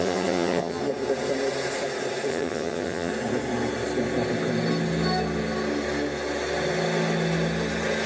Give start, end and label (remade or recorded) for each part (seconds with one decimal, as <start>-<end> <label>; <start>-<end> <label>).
0.0-0.8 remade; 0.8-2.3 recorded; 2.3-3.1 remade; 3.1-8.1 recorded